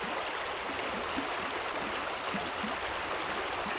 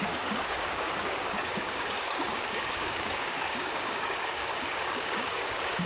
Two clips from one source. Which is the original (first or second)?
first